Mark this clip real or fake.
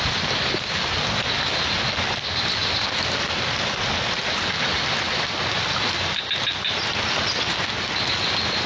real